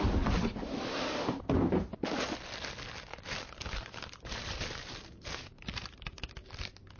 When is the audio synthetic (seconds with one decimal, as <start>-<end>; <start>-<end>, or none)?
3.1-6.3